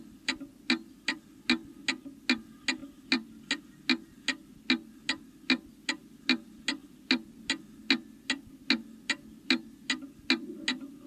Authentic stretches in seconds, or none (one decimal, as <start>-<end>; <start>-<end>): 0.0-11.1